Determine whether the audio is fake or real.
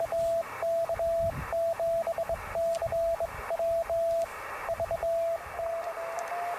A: real